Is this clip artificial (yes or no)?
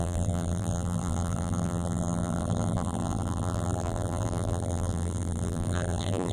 yes